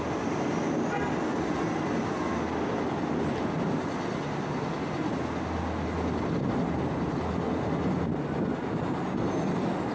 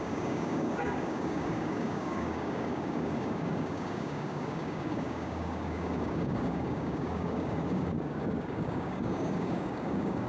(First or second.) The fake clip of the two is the second